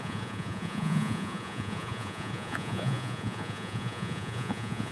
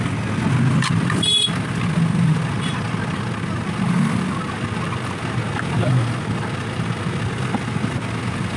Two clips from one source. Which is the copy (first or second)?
first